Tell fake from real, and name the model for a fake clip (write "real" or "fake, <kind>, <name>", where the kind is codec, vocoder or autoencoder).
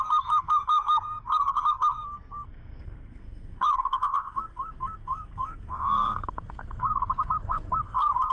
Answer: fake, codec, SNAC